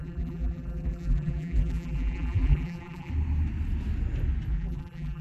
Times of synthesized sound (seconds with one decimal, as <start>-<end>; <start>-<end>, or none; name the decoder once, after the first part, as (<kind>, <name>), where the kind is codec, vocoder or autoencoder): 0.0-3.1 (vocoder, BigVGAN v2); 4.5-5.2

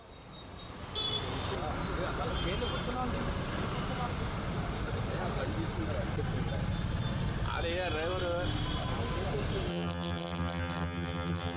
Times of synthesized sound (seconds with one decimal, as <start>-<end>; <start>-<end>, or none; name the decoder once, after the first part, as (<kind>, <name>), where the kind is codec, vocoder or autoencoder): 9.7-11.6 (vocoder, HiFi-GAN)

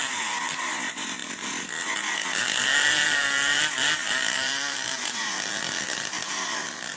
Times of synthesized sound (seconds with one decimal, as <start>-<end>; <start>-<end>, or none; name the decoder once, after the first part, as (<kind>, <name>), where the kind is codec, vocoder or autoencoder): none

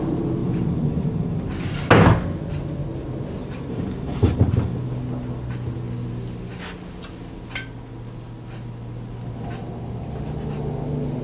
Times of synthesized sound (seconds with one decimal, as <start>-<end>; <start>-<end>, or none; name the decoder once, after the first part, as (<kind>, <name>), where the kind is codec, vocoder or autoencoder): 0.4-1.4 (vocoder, BigVGAN v2); 3.4-4.8

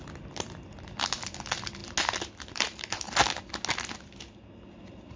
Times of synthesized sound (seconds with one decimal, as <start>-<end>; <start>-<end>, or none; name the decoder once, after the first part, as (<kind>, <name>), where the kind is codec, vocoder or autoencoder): none